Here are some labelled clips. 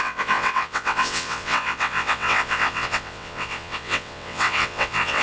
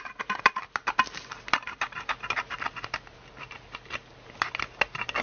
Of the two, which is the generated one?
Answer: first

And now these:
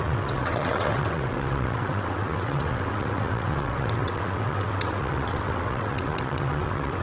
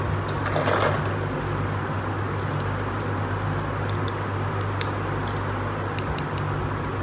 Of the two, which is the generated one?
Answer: first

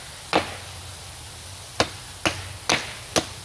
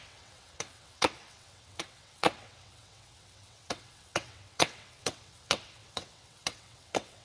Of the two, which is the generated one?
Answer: second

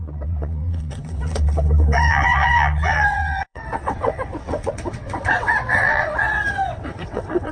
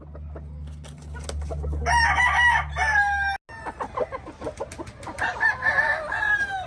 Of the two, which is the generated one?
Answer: first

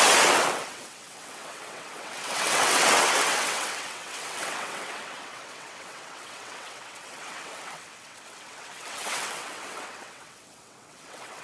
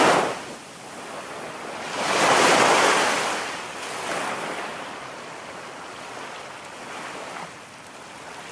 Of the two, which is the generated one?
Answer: first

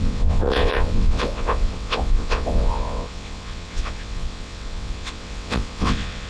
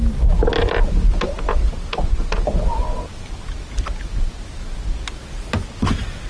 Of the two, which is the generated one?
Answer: first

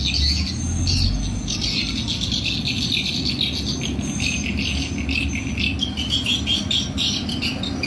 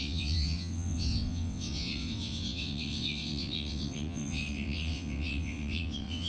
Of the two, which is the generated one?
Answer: second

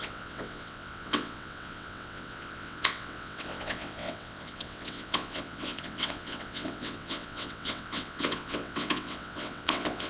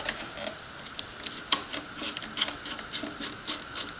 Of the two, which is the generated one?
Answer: first